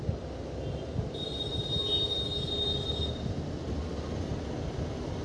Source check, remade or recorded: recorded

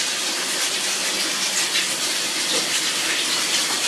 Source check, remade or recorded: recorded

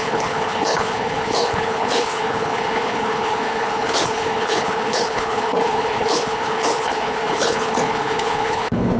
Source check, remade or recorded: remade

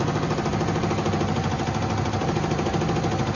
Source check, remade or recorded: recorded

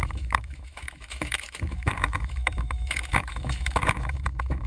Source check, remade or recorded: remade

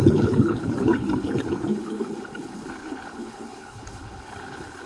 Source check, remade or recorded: remade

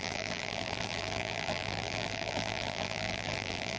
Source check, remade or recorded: remade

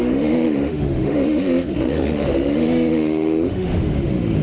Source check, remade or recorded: remade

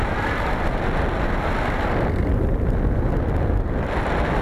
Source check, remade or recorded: recorded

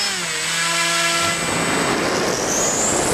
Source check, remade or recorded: recorded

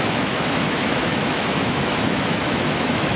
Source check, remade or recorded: remade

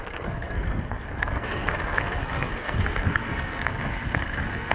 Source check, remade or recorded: remade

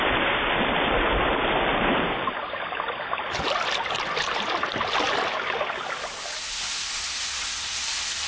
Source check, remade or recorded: recorded